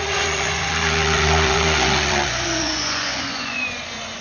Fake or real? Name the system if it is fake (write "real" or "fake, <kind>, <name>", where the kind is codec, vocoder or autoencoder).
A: fake, vocoder, Vocos